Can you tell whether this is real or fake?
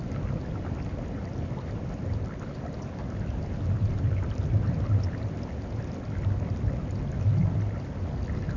real